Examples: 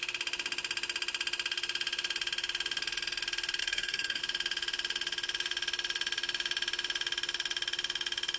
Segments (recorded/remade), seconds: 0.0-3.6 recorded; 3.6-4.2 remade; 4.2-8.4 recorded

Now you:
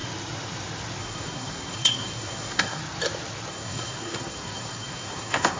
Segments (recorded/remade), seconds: 0.0-1.0 recorded; 1.0-2.8 remade; 2.8-3.5 recorded; 3.5-5.6 remade

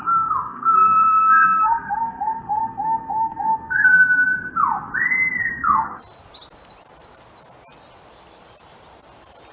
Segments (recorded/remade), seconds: 0.0-4.3 remade; 4.3-5.4 recorded; 5.4-6.0 remade; 6.0-9.5 recorded

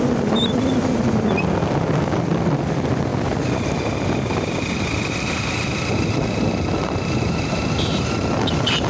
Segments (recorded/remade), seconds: 0.0-8.9 recorded

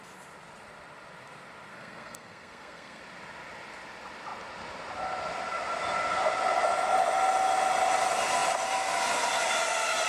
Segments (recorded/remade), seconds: 0.0-1.7 recorded; 1.7-3.0 remade; 3.0-10.1 recorded

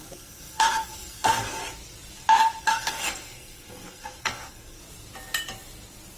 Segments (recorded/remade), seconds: 0.0-1.6 remade; 1.6-2.6 recorded; 2.6-4.8 remade; 4.8-6.2 recorded

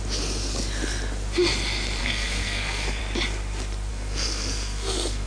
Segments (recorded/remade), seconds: 0.0-2.0 recorded; 2.0-3.0 remade; 3.0-3.9 recorded; 3.9-5.3 remade